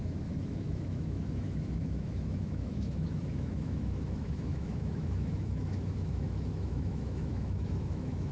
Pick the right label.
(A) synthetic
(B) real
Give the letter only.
A